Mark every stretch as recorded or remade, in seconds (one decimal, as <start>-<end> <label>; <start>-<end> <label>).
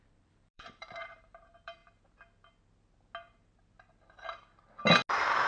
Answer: 0.0-1.8 remade; 1.8-5.1 recorded; 5.1-5.5 remade